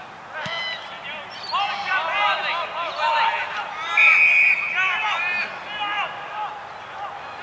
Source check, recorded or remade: recorded